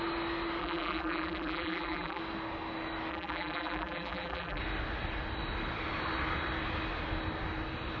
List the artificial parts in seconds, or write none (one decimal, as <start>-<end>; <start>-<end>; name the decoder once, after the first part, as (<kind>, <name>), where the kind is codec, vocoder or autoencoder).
0.6-2.2 (vocoder, BigVGAN v2); 3.1-4.6